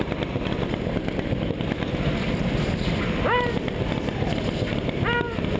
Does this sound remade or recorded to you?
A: recorded